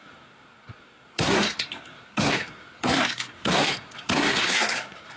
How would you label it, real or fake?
fake